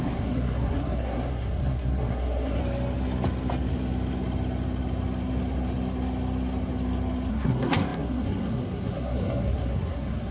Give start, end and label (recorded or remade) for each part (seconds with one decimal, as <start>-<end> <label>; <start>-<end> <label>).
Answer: 0.0-2.6 remade; 2.6-7.3 recorded; 7.3-10.3 remade